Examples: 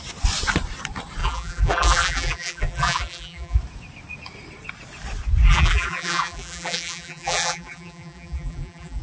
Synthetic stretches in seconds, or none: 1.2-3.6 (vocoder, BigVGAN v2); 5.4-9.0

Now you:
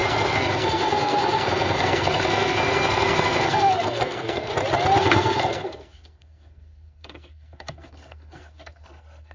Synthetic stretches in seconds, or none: 0.0-4.5 (codec, SNAC); 5.0-9.3

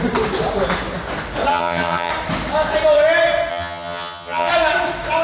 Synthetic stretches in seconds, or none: 1.5-2.1 (vocoder, HiFi-GAN); 3.5-4.5